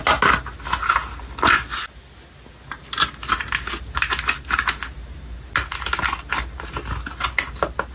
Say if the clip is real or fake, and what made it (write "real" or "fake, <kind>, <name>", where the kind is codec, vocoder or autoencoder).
real